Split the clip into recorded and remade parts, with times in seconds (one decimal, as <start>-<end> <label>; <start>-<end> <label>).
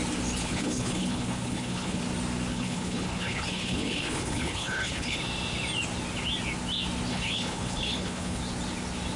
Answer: 0.0-0.4 recorded; 0.4-2.0 remade; 2.0-2.5 recorded; 2.5-5.2 remade; 5.2-7.1 recorded; 7.1-8.4 remade; 8.4-9.2 recorded